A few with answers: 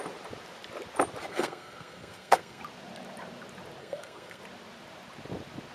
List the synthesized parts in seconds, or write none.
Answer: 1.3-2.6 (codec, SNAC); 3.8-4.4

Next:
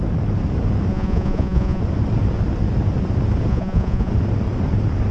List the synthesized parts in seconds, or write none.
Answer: 0.9-1.8 (vocoder, Vocos); 3.5-4.1

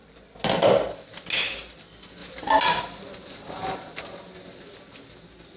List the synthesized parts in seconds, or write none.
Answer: none

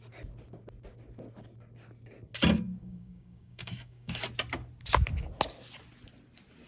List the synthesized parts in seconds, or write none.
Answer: 2.8-4.2 (codec, DAC)